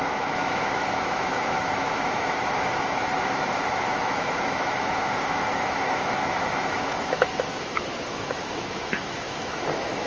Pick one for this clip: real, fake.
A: fake